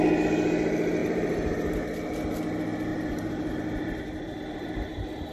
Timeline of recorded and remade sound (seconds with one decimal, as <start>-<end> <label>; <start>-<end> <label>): 0.0-1.0 recorded; 1.0-1.7 remade; 1.7-2.9 recorded; 2.9-5.3 remade